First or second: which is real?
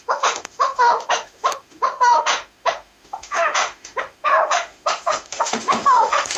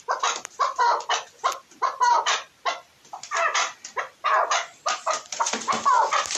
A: second